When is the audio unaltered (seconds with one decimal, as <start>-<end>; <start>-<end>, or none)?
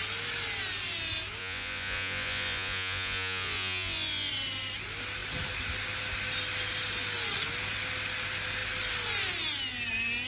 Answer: 0.0-1.4; 4.3-10.3